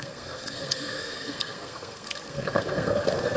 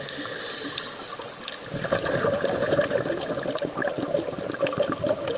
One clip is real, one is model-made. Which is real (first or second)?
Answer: second